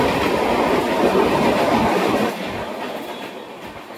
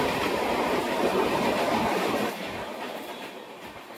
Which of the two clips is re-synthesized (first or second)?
second